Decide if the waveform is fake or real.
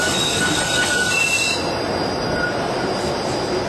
real